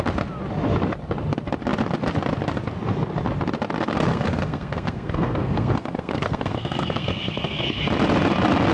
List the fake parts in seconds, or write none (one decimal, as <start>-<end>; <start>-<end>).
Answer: 4.1-7.8